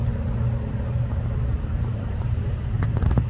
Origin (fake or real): fake